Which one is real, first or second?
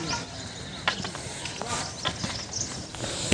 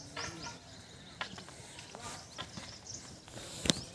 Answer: first